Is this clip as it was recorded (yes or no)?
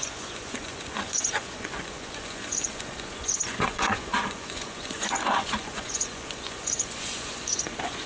no